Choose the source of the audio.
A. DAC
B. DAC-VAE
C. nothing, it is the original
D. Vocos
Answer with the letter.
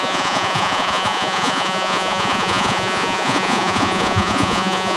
D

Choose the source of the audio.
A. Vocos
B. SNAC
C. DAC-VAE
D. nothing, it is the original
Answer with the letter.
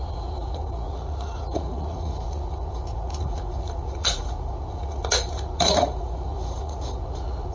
A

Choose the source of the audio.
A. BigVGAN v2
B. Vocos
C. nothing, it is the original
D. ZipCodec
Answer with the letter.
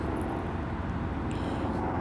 C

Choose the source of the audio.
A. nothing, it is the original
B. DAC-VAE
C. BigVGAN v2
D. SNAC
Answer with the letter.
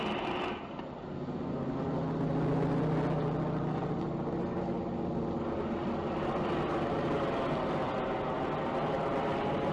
A